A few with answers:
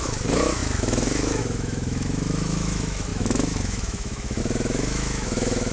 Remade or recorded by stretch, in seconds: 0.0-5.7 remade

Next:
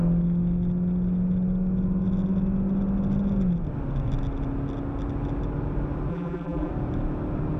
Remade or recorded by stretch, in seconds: 0.0-6.1 recorded; 6.1-6.7 remade; 6.7-7.6 recorded

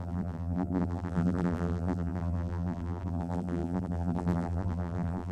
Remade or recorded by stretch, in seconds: 0.0-5.3 remade

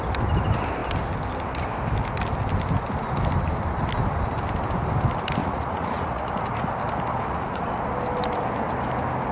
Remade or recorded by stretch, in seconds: 0.0-5.4 recorded; 5.4-6.3 remade; 6.3-7.1 recorded; 7.1-7.7 remade; 7.7-9.3 recorded